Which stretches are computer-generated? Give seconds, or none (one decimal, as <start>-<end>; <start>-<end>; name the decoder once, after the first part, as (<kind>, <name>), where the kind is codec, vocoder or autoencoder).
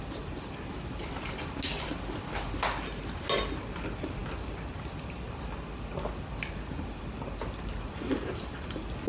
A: none